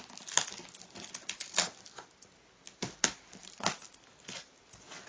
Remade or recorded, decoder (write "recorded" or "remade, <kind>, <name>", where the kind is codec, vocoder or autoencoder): recorded